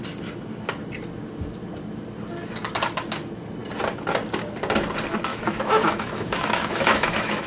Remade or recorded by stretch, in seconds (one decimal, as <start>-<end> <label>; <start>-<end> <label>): 0.0-5.3 recorded; 5.3-7.5 remade